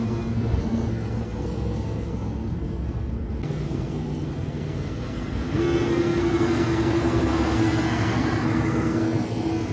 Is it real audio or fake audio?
fake